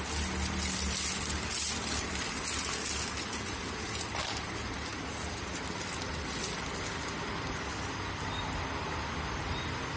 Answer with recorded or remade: recorded